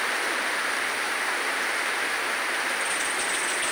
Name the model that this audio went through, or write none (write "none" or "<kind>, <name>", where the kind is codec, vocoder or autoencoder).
none